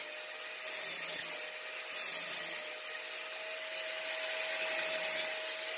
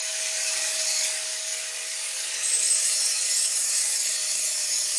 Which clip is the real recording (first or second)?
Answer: first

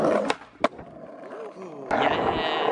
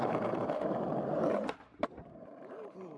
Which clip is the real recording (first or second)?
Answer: first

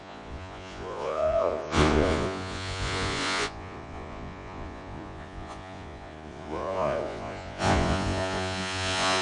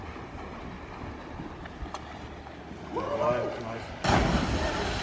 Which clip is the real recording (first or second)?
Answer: second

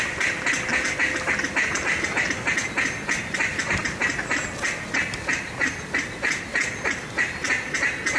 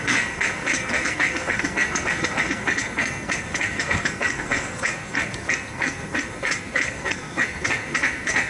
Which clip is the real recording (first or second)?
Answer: first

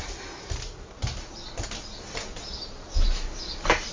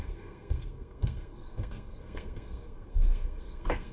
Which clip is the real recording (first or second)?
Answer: first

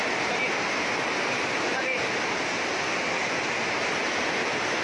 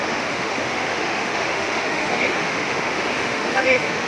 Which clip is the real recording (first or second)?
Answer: first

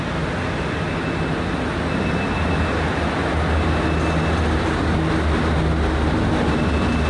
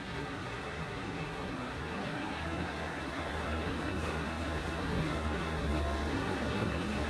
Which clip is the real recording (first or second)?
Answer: first